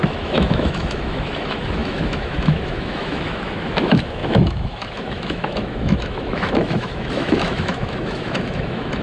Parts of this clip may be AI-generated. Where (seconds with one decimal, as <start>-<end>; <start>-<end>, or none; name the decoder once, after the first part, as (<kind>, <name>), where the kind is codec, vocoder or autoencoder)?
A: 0.0-9.0 (autoencoder, DAC-VAE)